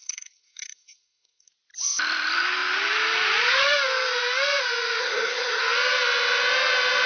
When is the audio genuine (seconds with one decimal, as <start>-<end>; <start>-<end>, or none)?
1.5-5.0; 5.6-7.1